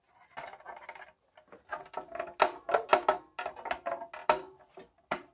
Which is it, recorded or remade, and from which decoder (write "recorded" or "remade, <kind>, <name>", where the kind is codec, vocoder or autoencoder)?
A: recorded